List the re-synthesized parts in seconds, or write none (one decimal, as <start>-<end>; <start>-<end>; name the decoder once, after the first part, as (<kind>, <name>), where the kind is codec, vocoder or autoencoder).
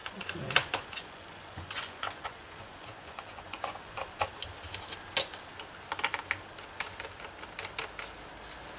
0.0-4.3 (vocoder, Vocos)